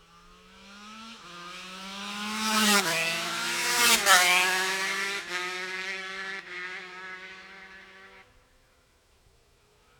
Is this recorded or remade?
remade